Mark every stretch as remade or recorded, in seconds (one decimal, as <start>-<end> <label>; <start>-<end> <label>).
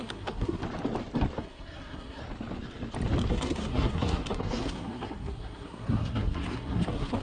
0.0-0.6 remade; 0.6-1.4 recorded; 1.4-2.2 remade; 2.2-3.3 recorded; 3.3-7.2 remade